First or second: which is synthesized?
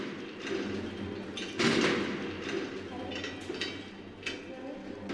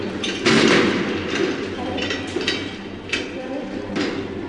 second